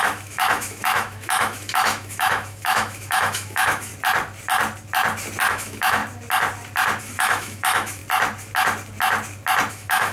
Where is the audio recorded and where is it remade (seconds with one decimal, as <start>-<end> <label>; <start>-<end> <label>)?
0.0-3.9 remade; 3.9-5.5 recorded; 5.5-6.0 remade; 6.0-7.0 recorded; 7.0-8.0 remade; 8.0-9.7 recorded; 9.7-10.1 remade